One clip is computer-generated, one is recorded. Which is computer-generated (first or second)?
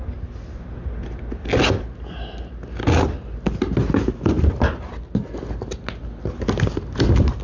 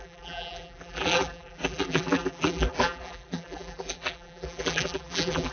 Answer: second